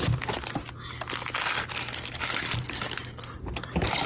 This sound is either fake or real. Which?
real